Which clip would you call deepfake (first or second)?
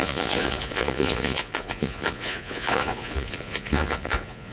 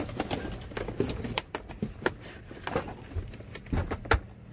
first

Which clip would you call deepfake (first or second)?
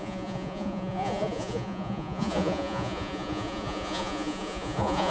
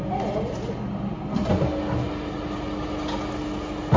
first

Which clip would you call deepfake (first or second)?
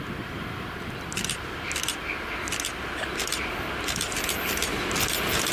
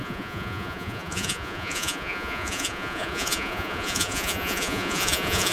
second